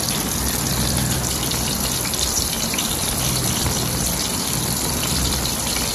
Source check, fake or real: fake